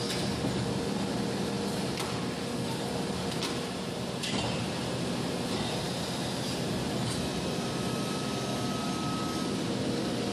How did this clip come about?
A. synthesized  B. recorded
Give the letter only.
B